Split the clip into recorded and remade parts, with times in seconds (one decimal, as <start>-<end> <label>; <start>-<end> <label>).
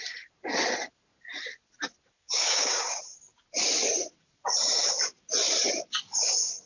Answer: 0.0-2.2 recorded; 2.2-3.0 remade; 3.0-6.7 recorded